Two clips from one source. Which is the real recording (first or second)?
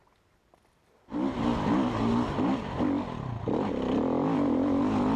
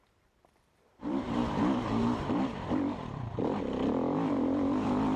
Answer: first